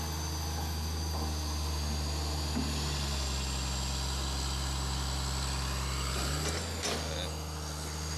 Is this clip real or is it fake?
real